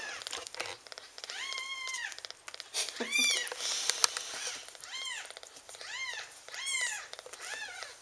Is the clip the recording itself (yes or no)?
yes